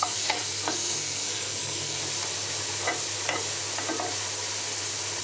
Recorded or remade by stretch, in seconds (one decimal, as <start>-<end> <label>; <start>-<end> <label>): 0.0-2.0 remade; 2.0-5.2 recorded